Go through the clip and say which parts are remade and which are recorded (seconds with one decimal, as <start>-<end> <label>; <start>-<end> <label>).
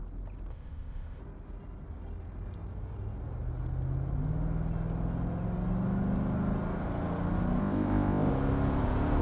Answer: 0.0-0.5 recorded; 0.5-1.2 remade; 1.2-7.6 recorded; 7.6-8.3 remade; 8.3-9.2 recorded